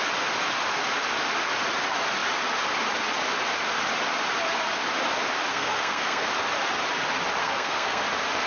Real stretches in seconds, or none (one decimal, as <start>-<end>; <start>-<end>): 0.0-5.5; 6.3-7.4; 8.0-8.5